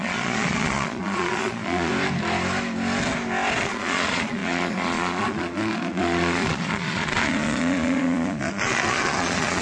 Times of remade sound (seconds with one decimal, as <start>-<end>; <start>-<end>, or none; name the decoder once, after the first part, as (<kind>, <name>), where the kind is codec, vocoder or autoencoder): 0.0-1.9 (vocoder, Vocos); 3.6-9.6